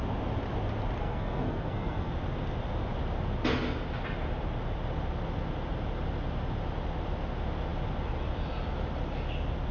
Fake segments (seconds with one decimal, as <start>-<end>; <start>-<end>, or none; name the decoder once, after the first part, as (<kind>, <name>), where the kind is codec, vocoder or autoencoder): 1.0-2.1 (codec, SNAC)